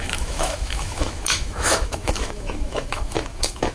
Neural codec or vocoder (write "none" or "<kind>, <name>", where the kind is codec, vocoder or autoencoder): autoencoder, DAC-VAE